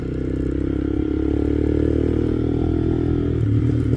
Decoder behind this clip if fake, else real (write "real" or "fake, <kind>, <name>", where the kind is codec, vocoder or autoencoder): real